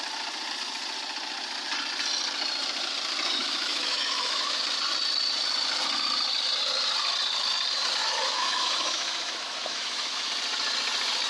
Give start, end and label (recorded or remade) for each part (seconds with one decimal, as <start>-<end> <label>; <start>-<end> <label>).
0.0-3.4 recorded; 3.4-4.6 remade; 4.6-8.0 recorded; 8.0-10.3 remade; 10.3-11.3 recorded